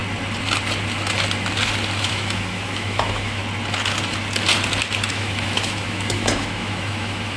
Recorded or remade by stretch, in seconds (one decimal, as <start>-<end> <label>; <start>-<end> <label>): 0.0-2.1 recorded; 2.1-3.4 remade; 3.4-5.1 recorded; 5.1-7.4 remade